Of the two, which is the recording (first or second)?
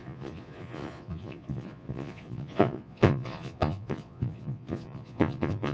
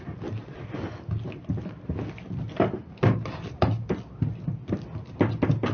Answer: second